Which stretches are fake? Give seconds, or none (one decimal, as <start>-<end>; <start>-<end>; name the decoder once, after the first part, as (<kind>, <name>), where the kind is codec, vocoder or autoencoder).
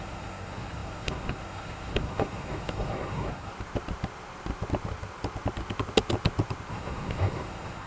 0.0-3.5 (codec, SNAC); 6.7-7.9